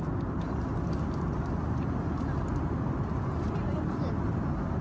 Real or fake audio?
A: real